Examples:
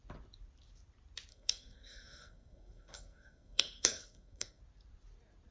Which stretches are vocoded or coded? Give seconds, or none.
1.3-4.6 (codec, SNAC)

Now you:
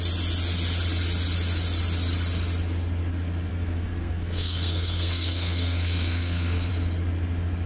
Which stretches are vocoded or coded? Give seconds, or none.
3.5-6.7 (codec, SNAC)

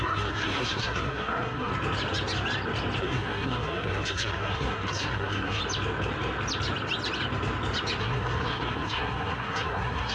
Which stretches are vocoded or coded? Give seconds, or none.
0.0-1.7 (codec, SNAC); 3.0-5.6; 8.0-10.1

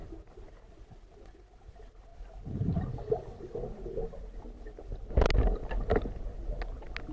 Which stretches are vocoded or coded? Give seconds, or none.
none